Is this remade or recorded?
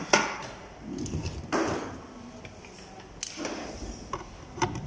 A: recorded